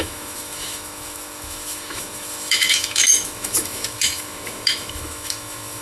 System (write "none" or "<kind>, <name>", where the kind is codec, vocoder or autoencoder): autoencoder, DAC-VAE